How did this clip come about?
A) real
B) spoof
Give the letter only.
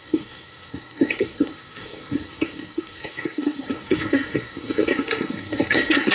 B